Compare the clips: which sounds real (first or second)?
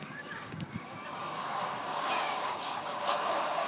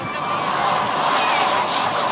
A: second